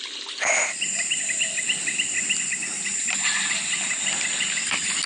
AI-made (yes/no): no